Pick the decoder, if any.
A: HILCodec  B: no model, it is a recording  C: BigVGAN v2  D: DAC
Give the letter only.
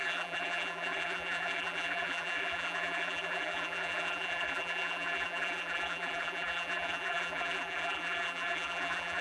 C